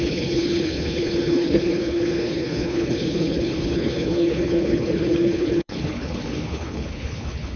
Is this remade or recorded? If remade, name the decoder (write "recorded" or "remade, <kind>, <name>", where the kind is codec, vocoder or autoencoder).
remade, codec, HILCodec